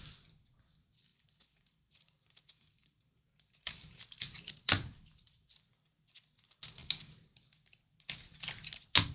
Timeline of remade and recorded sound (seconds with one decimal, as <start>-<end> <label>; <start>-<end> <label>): 0.0-1.1 recorded; 1.1-5.6 remade; 5.6-9.1 recorded